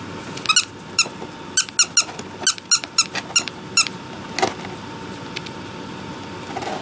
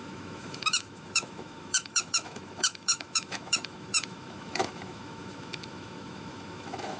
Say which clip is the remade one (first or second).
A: second